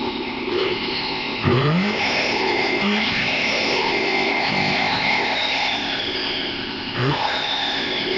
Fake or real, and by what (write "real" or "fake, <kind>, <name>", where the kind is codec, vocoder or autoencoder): fake, codec, ZipCodec